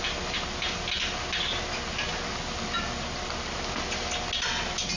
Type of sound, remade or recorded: recorded